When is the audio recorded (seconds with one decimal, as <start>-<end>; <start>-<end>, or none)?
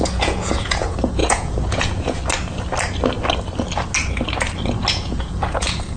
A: 2.2-4.9